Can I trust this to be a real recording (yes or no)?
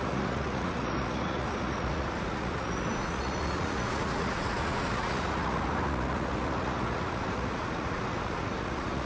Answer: no